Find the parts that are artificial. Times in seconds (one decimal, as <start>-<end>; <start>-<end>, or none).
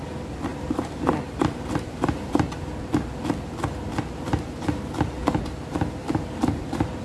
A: 0.5-2.3; 6.0-6.6